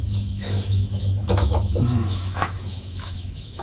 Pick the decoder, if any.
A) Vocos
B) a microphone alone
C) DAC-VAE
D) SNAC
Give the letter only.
C